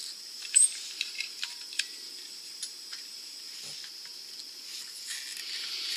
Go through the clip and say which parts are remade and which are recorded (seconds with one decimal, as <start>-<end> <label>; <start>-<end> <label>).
0.0-3.5 remade; 3.5-6.0 recorded